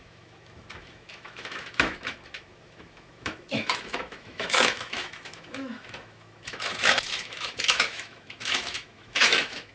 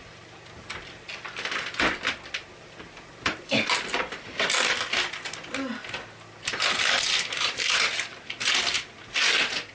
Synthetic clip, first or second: first